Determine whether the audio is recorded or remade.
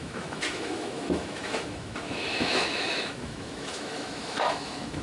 remade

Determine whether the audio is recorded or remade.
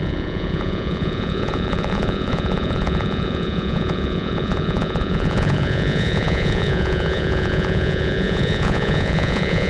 remade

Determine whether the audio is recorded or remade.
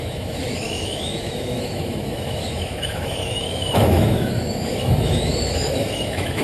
remade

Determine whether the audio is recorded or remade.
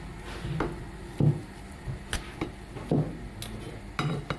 recorded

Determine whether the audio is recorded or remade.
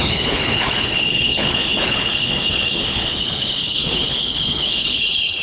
remade